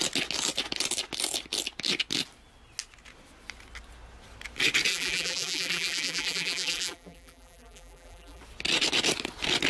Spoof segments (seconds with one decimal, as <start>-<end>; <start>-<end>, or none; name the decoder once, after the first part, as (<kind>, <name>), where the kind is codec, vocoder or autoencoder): 4.9-8.4 (vocoder, BigVGAN v2)